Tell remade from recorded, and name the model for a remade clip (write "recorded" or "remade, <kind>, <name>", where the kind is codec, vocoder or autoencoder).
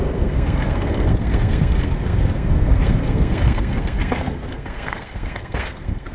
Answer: remade, codec, SNAC